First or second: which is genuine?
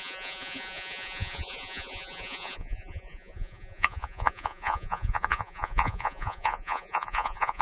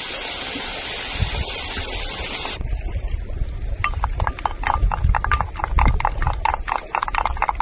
second